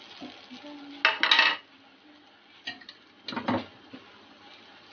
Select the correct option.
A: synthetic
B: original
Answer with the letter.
B